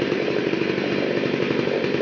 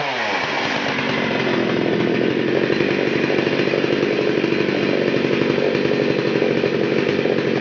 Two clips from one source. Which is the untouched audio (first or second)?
second